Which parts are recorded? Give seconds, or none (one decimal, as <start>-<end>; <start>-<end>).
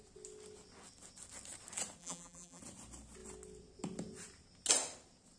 0.0-2.0; 2.6-5.4